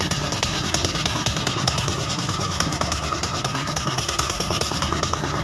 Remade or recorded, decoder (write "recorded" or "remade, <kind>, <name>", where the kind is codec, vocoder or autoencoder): remade, codec, SNAC